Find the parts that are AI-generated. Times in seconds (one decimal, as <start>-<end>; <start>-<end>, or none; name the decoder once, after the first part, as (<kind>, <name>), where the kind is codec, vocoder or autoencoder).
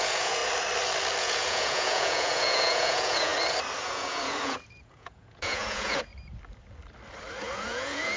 0.0-0.4 (vocoder, Vocos); 1.2-3.3; 3.8-6.1; 7.4-8.2